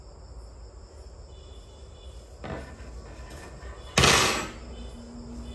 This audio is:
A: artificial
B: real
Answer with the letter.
B